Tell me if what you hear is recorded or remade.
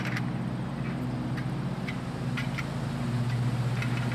recorded